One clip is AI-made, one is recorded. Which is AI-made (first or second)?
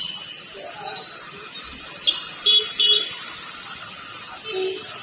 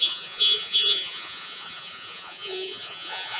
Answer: second